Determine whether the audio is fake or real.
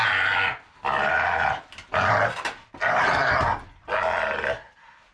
real